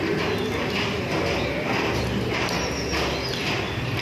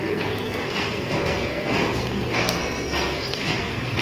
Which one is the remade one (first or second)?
second